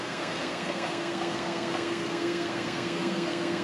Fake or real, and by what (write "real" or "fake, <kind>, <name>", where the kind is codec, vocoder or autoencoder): fake, codec, SNAC